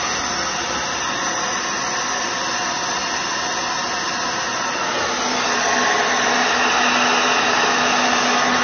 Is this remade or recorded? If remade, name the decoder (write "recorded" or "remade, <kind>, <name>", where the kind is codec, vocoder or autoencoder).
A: recorded